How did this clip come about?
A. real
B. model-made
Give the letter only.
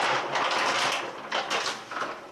A